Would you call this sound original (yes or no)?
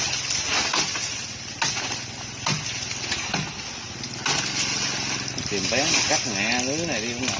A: yes